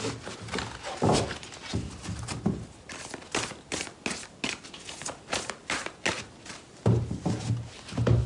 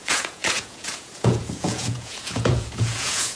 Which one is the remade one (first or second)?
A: second